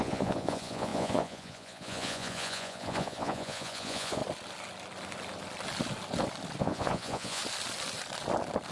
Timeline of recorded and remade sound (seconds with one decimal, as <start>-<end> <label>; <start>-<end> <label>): 0.0-4.2 remade; 4.2-6.6 recorded; 6.6-7.4 remade; 7.4-8.7 recorded